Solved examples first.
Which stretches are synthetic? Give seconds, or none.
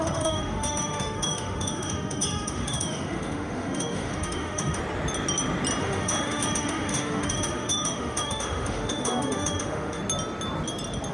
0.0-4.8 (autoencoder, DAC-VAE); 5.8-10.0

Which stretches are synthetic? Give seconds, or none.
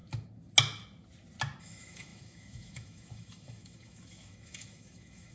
1.6-5.3 (autoencoder, DAC-VAE)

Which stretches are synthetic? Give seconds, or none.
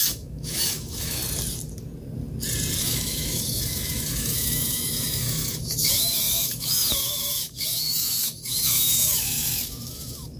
0.0-1.2 (autoencoder, DAC-VAE); 2.8-10.4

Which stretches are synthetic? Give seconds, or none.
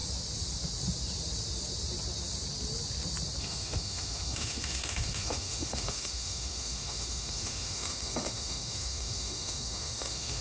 3.4-10.4 (autoencoder, DAC-VAE)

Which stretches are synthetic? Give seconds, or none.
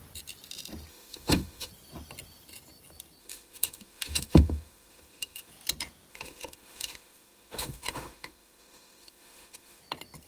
0.9-1.7 (autoencoder, DAC-VAE); 3.2-5.5; 6.1-9.8